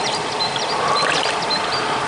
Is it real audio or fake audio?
real